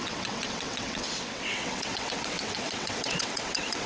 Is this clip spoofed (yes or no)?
yes